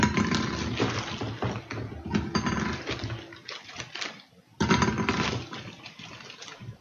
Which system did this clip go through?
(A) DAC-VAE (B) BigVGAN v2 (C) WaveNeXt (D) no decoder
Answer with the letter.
D